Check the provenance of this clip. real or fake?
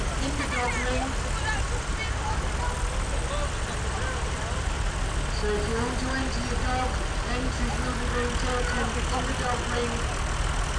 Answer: real